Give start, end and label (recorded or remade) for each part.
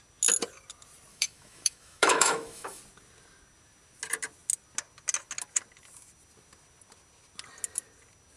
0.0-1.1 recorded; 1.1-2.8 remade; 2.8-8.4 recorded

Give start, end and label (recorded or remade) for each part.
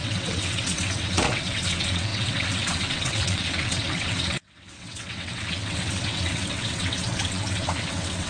0.0-8.3 remade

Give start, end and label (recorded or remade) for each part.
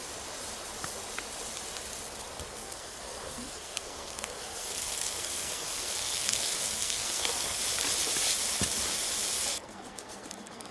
0.0-2.6 recorded; 2.6-7.6 remade; 7.6-9.5 recorded; 9.5-10.7 remade